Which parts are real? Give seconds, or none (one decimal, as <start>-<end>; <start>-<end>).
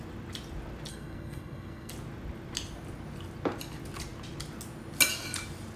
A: 0.0-0.9; 1.9-5.8